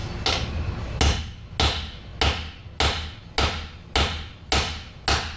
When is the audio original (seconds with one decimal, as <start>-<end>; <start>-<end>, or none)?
0.0-5.4